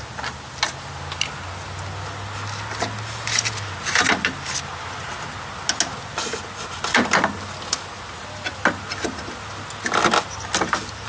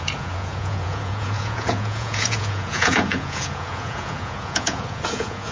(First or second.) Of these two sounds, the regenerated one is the second